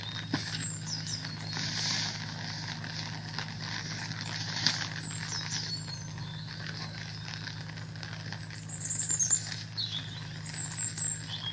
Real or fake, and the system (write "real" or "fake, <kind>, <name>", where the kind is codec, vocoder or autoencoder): real